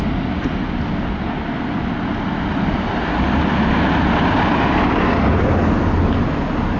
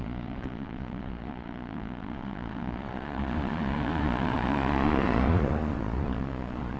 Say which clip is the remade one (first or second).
second